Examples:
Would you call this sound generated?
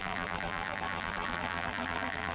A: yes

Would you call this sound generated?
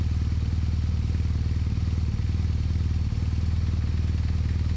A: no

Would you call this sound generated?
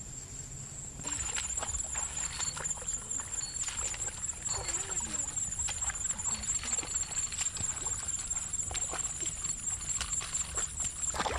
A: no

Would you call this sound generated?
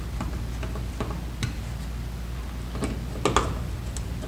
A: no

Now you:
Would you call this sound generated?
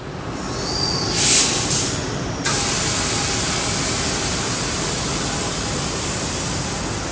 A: no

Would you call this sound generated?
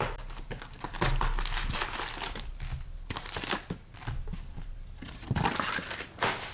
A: no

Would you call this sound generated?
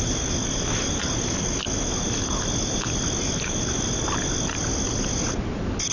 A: no